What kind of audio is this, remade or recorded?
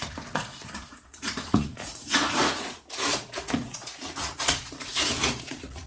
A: remade